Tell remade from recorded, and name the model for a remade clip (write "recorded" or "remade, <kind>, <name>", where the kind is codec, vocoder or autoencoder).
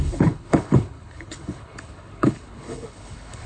remade, codec, HILCodec